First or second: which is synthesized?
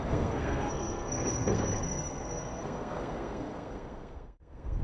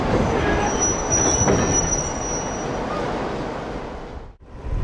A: first